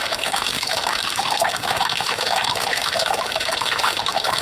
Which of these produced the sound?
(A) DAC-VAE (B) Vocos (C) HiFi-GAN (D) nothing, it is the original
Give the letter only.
A